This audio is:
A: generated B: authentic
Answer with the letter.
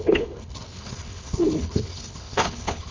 A